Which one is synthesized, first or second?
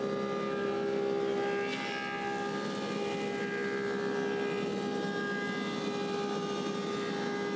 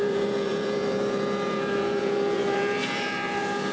second